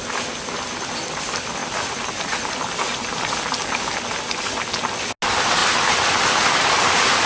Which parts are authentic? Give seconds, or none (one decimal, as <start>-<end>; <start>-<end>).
0.0-7.3